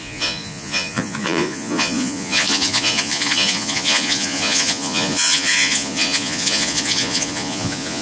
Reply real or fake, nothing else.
fake